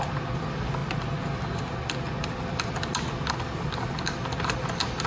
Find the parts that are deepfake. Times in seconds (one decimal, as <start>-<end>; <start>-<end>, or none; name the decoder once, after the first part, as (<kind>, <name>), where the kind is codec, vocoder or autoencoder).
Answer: none